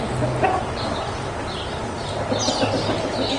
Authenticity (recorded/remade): recorded